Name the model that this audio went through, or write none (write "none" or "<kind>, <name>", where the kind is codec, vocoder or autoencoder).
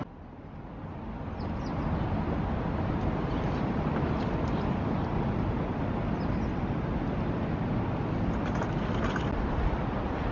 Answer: none